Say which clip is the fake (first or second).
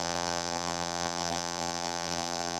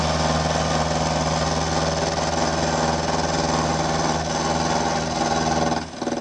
first